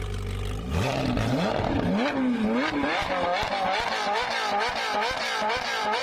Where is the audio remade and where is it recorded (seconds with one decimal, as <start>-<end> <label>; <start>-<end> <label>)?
0.0-0.9 recorded; 0.9-1.9 remade; 1.9-5.2 recorded; 5.2-6.0 remade